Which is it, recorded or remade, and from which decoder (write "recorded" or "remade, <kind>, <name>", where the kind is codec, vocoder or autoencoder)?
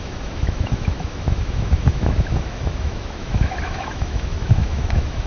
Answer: remade, autoencoder, DAC-VAE